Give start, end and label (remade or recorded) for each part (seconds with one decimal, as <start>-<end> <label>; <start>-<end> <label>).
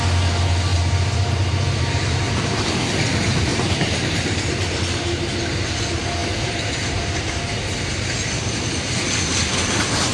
0.0-0.7 recorded; 0.7-2.9 remade; 2.9-3.5 recorded; 3.5-5.8 remade; 5.8-6.2 recorded; 6.2-7.4 remade; 7.4-10.1 recorded